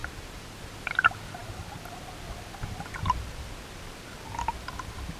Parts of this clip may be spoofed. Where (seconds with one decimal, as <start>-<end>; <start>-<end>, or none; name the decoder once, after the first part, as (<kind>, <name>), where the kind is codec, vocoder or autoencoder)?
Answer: 0.0-0.6 (vocoder, BigVGAN v2)

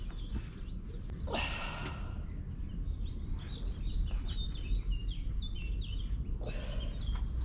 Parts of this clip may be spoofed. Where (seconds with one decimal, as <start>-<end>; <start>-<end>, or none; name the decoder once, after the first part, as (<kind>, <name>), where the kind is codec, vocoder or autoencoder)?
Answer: none

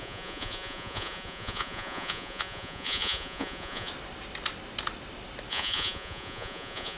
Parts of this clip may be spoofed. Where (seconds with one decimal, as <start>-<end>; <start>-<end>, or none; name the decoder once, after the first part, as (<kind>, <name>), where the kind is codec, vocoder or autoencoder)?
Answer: 0.0-3.9 (vocoder, Vocos); 5.5-7.0

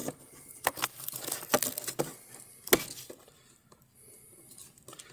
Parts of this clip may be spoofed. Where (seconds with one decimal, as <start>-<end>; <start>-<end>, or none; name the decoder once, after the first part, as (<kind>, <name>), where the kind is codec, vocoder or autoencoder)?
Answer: none

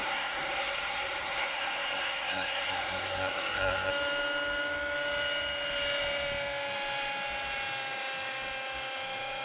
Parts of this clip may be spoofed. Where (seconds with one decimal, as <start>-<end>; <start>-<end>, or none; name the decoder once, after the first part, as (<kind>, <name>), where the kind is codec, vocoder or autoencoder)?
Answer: 0.0-3.9 (codec, SNAC)

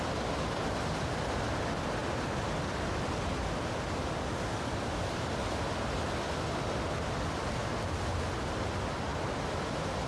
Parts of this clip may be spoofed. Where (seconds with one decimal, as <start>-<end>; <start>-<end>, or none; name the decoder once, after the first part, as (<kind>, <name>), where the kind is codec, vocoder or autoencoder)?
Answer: none